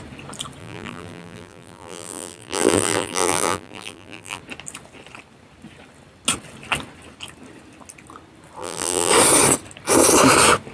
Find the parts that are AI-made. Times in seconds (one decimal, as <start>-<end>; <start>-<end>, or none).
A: 0.6-4.4; 8.6-9.1